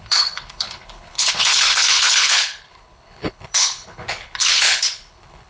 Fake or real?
fake